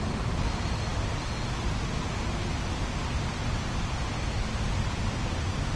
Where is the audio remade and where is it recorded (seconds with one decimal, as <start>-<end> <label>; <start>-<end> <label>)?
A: 0.0-0.9 remade; 0.9-4.4 recorded; 4.4-5.8 remade